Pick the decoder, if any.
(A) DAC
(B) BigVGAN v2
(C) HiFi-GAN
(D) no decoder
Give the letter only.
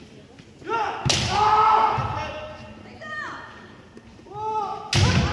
D